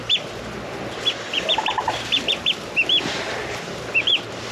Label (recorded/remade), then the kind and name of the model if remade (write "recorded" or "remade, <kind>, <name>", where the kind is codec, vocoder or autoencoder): recorded